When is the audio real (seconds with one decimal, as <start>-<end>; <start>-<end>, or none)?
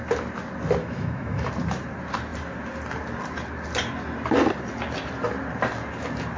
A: 0.0-0.8; 1.5-6.4